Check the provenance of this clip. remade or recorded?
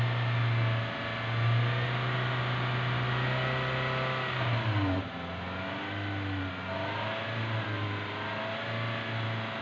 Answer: recorded